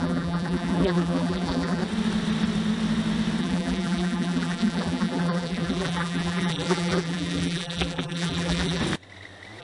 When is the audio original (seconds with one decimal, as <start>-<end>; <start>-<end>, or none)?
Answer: 1.8-3.4; 8.8-9.6

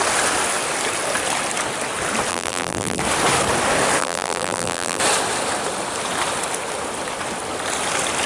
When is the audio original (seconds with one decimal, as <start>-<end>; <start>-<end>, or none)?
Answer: 0.0-2.3; 3.0-4.0; 5.0-8.3

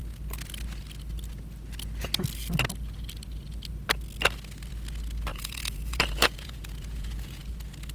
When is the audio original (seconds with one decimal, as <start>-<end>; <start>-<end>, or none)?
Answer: 0.0-5.3; 7.4-7.9